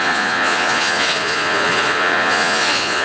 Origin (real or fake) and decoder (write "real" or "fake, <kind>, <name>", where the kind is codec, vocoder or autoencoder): fake, vocoder, Vocos